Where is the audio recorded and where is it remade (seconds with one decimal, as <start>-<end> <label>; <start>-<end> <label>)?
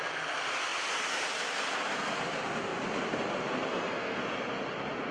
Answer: 0.0-3.7 recorded; 3.7-4.2 remade; 4.2-5.1 recorded